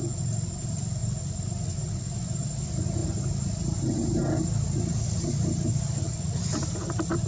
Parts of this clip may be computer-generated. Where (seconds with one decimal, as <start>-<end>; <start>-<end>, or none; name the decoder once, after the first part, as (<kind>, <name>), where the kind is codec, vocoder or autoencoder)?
none